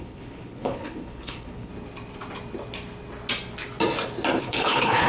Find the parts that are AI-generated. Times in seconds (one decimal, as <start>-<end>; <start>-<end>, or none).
0.0-1.7; 4.4-5.1